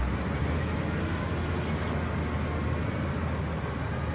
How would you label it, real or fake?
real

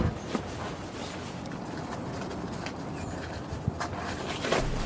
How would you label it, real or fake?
real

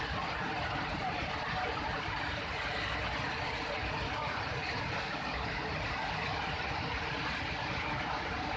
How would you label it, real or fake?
real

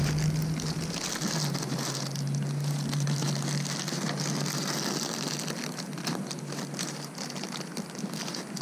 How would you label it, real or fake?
real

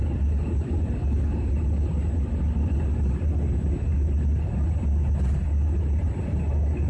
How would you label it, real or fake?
real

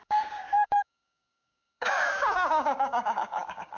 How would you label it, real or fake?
fake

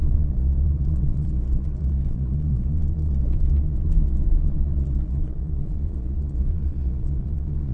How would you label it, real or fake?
fake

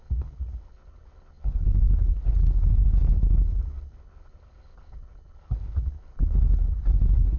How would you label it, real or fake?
fake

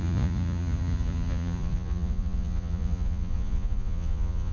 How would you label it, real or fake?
fake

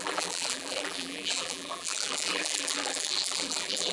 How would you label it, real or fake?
fake